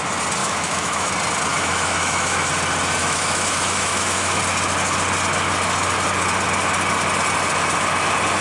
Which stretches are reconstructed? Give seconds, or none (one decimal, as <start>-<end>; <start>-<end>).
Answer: 0.4-1.1; 1.5-2.5; 3.0-4.4